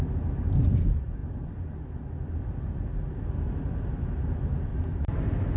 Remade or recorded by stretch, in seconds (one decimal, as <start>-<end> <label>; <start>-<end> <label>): 0.0-5.6 recorded